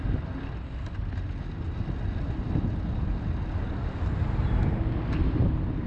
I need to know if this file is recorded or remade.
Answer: recorded